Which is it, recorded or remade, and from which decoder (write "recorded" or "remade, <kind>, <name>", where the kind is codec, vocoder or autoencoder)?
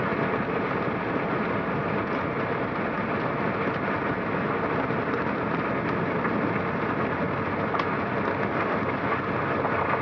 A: recorded